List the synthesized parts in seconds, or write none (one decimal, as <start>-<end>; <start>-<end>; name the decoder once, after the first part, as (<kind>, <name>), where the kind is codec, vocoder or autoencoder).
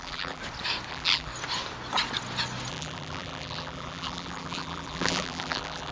0.0-0.4 (vocoder, BigVGAN v2); 0.9-1.3; 2.7-5.9